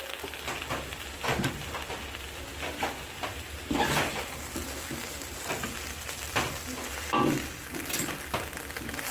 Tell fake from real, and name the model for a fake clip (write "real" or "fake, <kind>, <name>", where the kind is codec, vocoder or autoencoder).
real